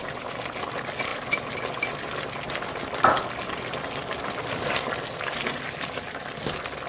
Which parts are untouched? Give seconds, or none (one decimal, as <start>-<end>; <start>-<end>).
0.0-6.9